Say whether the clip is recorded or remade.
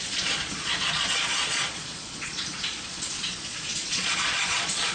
remade